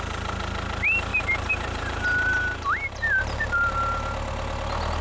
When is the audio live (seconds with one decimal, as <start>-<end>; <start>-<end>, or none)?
0.0-1.1; 3.7-5.0